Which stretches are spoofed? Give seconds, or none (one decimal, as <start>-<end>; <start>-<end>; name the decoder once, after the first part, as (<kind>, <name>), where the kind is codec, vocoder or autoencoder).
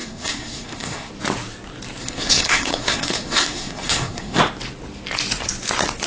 0.0-1.1 (codec, SNAC); 2.0-4.4